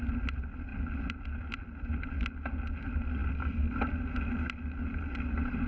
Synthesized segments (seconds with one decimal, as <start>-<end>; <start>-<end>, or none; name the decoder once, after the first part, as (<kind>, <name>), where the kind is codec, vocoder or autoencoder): none